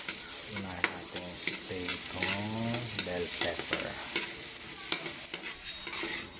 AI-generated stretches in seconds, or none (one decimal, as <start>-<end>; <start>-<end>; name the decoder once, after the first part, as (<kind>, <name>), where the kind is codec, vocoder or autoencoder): none